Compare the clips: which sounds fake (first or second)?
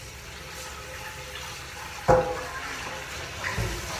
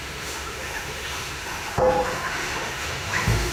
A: second